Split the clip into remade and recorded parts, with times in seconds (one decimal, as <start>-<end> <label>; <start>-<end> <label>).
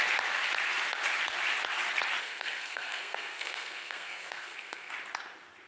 0.0-2.2 recorded; 2.2-4.9 remade; 4.9-5.7 recorded